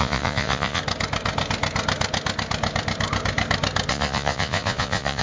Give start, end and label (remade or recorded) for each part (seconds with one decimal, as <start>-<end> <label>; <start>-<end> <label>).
0.0-0.8 remade; 0.8-3.9 recorded; 3.9-5.2 remade